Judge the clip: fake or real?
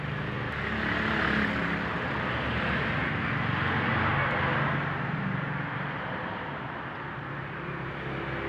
real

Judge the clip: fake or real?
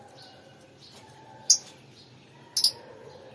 real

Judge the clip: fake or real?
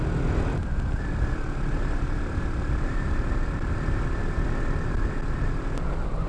real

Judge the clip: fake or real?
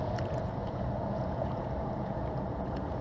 fake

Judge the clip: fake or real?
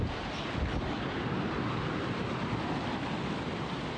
real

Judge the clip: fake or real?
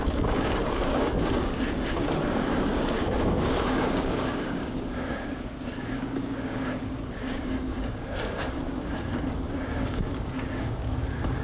fake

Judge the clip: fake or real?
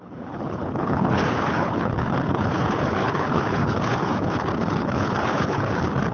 fake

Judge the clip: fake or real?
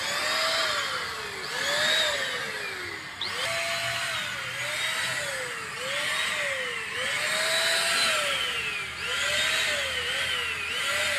real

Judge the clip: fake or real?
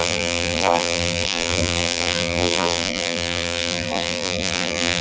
fake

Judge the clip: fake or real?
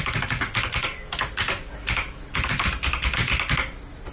real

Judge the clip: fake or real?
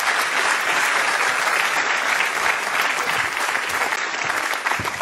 fake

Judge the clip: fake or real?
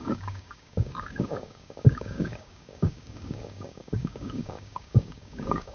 fake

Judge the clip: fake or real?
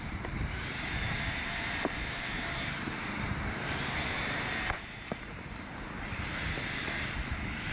fake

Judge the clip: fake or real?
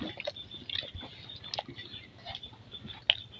real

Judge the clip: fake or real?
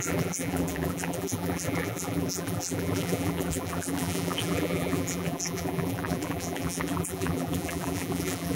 fake